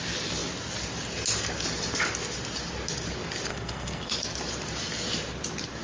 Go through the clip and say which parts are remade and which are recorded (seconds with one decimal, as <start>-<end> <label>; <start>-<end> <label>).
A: 0.0-3.5 recorded; 3.5-4.1 remade; 4.1-5.8 recorded